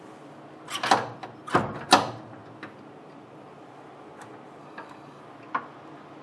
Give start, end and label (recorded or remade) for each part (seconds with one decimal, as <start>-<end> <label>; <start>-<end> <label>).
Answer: 0.0-4.6 recorded; 4.6-5.2 remade; 5.2-6.2 recorded